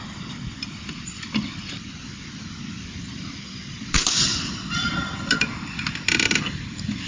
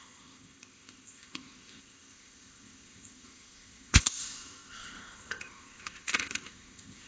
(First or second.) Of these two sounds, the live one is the first